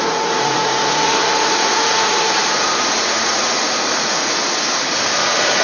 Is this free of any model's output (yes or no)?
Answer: no